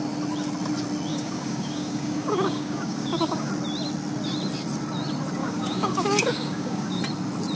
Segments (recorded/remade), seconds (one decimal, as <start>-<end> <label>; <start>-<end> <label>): 0.0-1.1 recorded; 1.1-3.5 remade; 3.5-5.4 recorded; 5.4-7.0 remade; 7.0-7.6 recorded